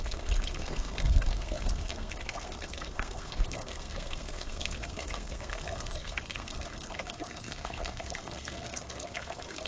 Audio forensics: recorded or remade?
remade